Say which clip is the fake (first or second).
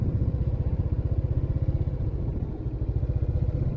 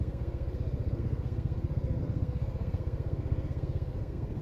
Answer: second